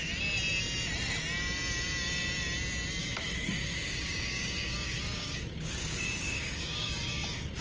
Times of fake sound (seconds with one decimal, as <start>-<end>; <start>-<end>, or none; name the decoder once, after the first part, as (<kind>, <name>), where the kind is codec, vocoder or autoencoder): 3.0-7.6 (codec, DAC)